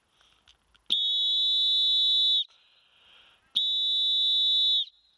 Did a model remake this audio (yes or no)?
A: no